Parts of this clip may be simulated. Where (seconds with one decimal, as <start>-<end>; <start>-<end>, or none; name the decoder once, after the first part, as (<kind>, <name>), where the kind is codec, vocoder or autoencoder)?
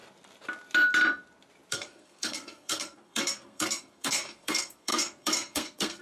1.7-6.0 (codec, SNAC)